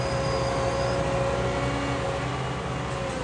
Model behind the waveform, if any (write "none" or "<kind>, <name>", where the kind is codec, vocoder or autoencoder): none